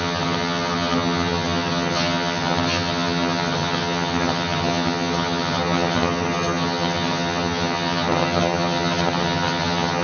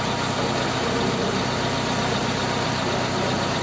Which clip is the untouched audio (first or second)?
second